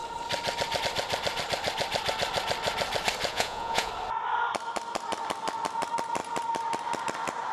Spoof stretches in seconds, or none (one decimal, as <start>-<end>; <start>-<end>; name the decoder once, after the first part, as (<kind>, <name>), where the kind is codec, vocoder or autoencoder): 3.3-3.9 (vocoder, Vocos)